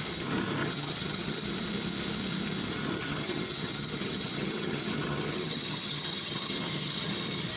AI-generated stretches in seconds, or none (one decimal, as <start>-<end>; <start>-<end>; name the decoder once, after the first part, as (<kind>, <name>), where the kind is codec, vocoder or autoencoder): 0.6-1.5 (vocoder, HiFi-GAN); 3.1-7.1

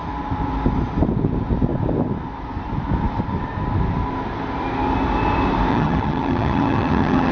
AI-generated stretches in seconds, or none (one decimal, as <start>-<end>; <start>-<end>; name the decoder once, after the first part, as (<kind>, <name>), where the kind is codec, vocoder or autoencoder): 5.7-7.3 (vocoder, HiFi-GAN)